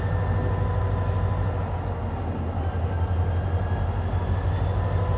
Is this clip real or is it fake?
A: real